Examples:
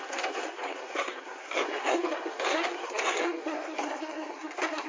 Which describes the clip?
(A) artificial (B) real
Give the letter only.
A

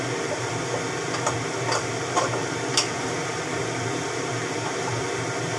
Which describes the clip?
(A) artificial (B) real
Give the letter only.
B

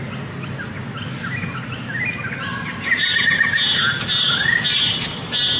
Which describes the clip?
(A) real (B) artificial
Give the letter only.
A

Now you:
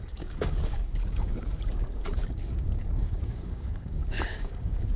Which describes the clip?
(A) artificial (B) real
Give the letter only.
A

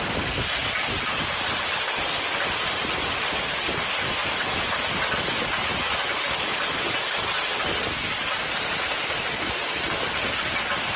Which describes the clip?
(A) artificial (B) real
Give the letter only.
B